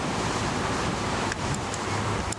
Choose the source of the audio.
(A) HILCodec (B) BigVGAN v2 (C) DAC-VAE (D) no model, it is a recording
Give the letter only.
B